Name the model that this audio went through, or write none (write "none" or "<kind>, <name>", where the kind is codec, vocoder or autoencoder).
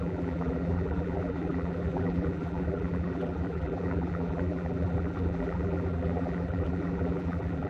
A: vocoder, BigVGAN v2